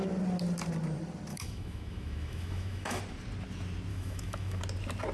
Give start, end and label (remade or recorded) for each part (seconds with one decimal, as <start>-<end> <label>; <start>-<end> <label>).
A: 0.0-1.3 recorded; 1.3-3.0 remade; 3.0-3.9 recorded; 3.9-4.6 remade; 4.6-5.1 recorded